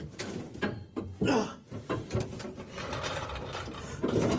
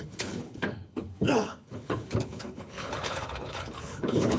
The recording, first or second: first